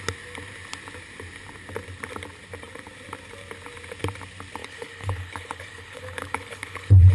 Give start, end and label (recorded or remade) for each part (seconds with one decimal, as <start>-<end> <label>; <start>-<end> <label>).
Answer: 0.0-4.6 recorded; 4.6-7.1 remade